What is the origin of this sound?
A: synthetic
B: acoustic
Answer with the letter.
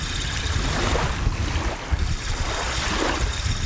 B